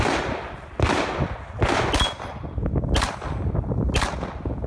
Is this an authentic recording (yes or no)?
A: yes